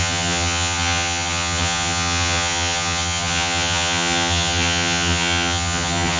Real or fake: fake